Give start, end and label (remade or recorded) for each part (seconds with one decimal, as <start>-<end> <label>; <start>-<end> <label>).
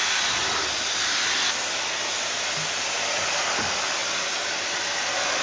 0.0-5.4 recorded